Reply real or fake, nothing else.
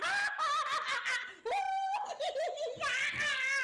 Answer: real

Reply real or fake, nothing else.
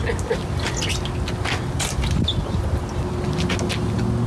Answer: real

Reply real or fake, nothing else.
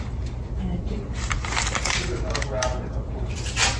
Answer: real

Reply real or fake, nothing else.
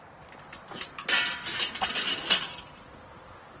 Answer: real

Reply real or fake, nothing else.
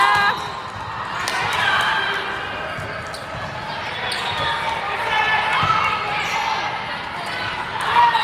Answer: real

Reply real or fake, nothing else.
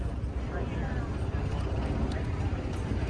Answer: real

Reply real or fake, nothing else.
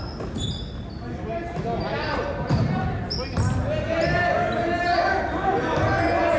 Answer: real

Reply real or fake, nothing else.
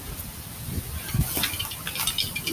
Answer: real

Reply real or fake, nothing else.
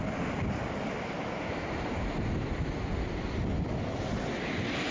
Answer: real